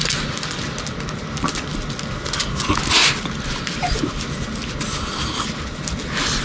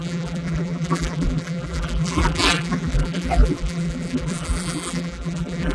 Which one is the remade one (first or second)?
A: second